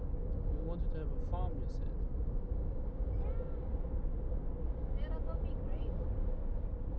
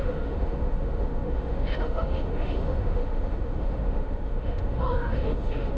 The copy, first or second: second